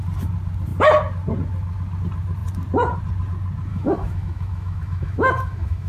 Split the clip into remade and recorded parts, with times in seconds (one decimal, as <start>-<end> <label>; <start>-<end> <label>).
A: 0.0-3.7 recorded; 3.7-5.9 remade